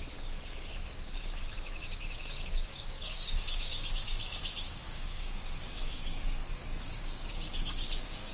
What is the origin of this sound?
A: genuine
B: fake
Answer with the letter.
B